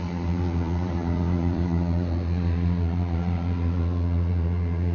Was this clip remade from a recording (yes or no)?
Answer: yes